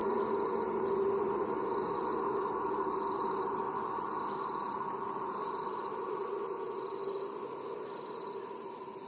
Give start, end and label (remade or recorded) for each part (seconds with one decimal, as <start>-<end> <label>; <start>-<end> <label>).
0.0-9.1 recorded